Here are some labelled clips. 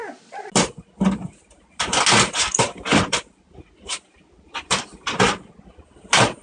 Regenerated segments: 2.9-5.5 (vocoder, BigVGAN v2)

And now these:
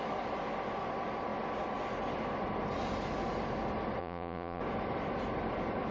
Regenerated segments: 4.0-4.6 (vocoder, Vocos)

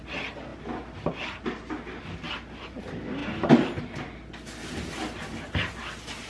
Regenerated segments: none

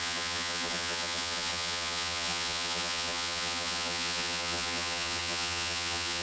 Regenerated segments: 0.0-6.2 (vocoder, BigVGAN v2)

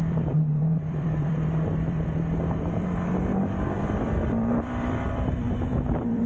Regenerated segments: 0.0-6.3 (vocoder, BigVGAN v2)

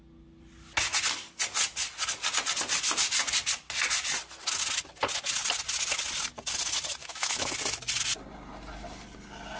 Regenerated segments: 7.0-7.5 (autoencoder, DAC-VAE)